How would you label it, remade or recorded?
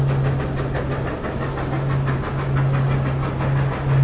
recorded